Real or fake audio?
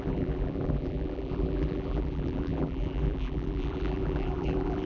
fake